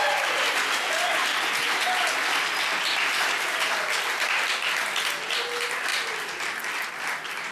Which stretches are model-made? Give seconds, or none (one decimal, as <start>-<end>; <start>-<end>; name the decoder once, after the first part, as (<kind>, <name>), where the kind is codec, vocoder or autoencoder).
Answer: 5.9-6.9 (vocoder, BigVGAN v2)